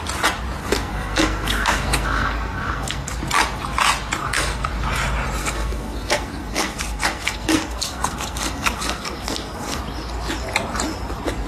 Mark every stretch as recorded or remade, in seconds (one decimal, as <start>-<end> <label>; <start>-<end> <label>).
0.0-0.6 recorded; 0.6-3.2 remade; 3.2-4.2 recorded; 4.2-4.7 remade; 4.7-5.4 recorded; 5.4-9.8 remade; 9.8-11.5 recorded